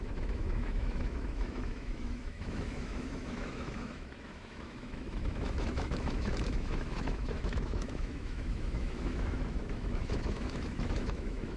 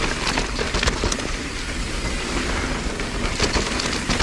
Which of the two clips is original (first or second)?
second